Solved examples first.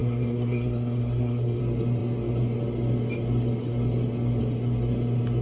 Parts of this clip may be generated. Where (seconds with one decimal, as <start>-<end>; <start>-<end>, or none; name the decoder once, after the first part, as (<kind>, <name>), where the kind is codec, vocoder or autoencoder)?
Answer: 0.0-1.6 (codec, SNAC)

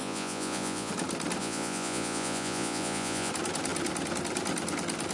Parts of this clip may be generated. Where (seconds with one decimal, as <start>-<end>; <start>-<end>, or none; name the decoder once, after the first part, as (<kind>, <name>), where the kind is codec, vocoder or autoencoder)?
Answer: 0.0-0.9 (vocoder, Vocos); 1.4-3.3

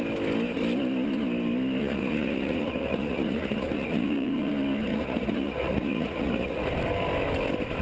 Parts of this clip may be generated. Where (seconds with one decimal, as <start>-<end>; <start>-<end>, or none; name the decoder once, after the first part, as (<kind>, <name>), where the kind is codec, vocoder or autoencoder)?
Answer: 1.8-4.5 (vocoder, Vocos); 4.9-6.7

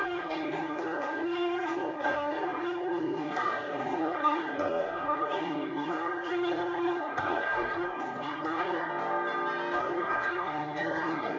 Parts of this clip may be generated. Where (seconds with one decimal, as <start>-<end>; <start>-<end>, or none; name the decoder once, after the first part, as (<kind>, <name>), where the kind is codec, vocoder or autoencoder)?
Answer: 0.0-8.9 (codec, SNAC); 9.8-11.4

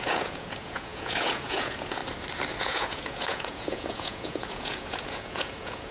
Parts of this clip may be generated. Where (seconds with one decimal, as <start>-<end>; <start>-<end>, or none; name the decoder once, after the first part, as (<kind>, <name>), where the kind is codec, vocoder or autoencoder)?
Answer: 0.0-2.0 (vocoder, Vocos); 2.6-5.9